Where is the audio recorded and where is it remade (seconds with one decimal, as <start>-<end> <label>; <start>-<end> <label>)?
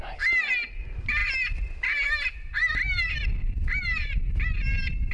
0.0-5.1 recorded